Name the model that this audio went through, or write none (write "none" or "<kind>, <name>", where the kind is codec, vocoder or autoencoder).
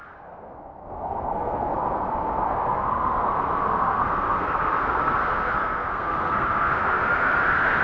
codec, SNAC